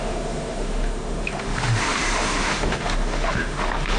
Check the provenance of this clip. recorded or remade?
remade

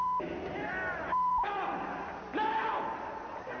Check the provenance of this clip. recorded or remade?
remade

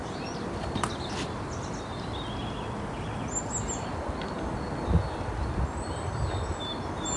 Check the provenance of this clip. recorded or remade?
recorded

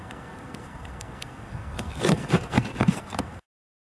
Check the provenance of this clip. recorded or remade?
remade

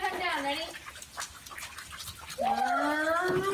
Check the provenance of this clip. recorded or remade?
recorded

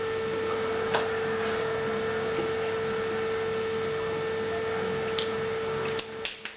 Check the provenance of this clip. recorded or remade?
recorded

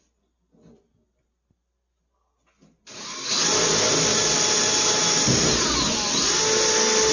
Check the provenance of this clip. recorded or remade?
recorded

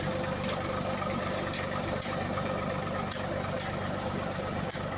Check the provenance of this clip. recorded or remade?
recorded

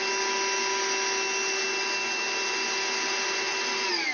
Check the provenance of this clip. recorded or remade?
recorded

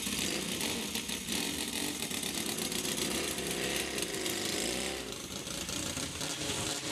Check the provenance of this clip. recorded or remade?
recorded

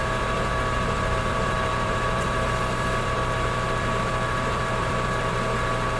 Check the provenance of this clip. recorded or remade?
remade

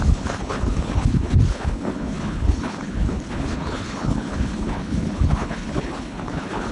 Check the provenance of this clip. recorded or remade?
remade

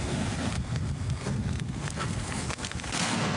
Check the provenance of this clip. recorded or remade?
remade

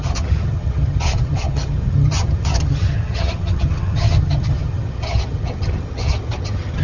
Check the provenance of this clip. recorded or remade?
remade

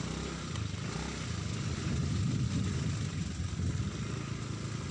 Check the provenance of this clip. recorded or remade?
recorded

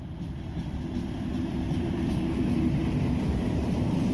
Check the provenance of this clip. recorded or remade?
remade